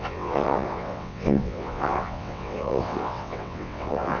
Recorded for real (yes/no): no